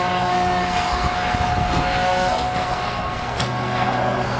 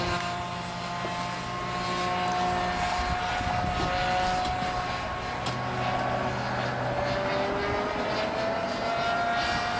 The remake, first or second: first